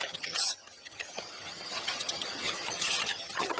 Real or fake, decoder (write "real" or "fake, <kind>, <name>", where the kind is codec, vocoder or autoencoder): fake, vocoder, HiFi-GAN